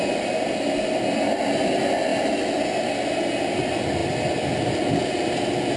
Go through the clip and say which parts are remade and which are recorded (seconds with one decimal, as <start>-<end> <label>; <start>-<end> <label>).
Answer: 0.0-5.8 recorded